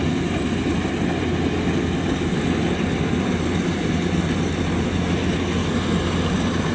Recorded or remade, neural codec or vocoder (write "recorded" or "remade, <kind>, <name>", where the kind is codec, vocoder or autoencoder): recorded